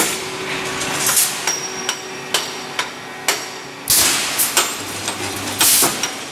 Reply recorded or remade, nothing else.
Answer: recorded